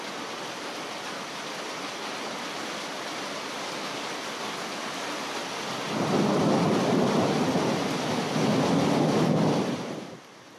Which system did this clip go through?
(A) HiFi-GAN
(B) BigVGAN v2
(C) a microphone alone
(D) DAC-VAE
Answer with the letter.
C